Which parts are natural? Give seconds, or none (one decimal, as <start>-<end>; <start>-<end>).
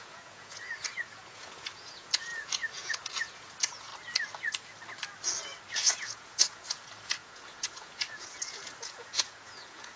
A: 3.9-5.7